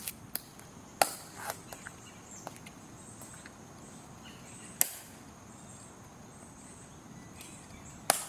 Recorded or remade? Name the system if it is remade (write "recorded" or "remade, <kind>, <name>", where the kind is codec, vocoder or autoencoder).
recorded